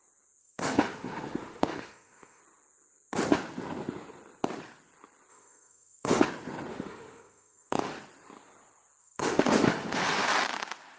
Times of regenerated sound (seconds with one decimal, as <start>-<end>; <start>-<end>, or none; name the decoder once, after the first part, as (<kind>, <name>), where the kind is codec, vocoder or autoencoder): 0.4-2.4 (autoencoder, DAC-VAE); 5.3-6.2; 6.7-7.9; 9.0-10.3